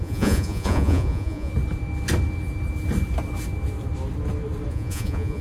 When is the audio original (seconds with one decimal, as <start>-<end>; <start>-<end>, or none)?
1.5-4.7